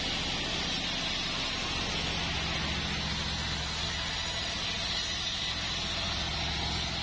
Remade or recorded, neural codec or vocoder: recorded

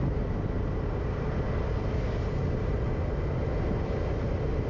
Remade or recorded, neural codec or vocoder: recorded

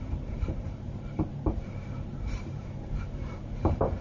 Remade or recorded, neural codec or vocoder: remade, vocoder, BigVGAN v2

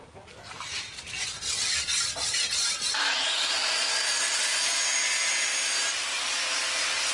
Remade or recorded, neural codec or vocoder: recorded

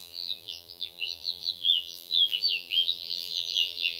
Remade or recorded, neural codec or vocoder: remade, vocoder, BigVGAN v2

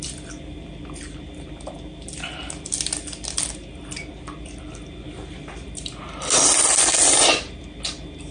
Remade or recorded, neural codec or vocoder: recorded